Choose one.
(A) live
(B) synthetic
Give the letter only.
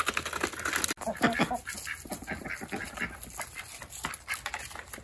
A